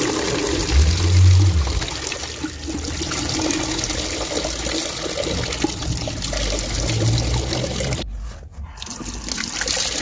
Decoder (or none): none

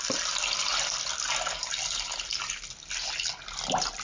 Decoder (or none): none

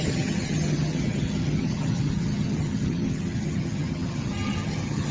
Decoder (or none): vocoder, HiFi-GAN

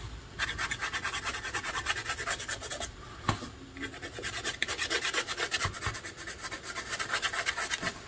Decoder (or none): none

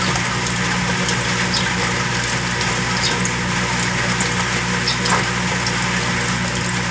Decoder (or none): none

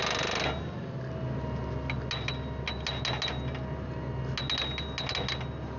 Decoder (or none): none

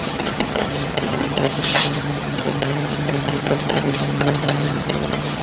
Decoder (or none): vocoder, HiFi-GAN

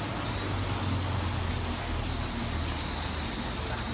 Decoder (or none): none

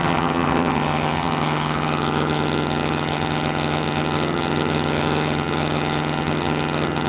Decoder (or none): vocoder, HiFi-GAN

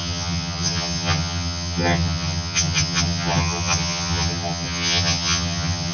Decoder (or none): vocoder, HiFi-GAN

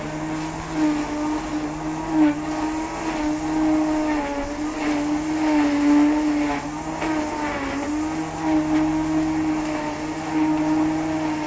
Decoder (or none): none